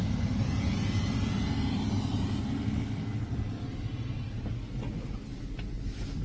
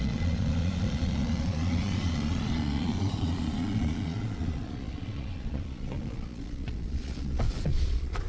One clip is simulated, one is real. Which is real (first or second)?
first